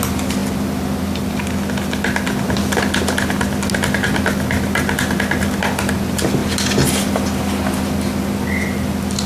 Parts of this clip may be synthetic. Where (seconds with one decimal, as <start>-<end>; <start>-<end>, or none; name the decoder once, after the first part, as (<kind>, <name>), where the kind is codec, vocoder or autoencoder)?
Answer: none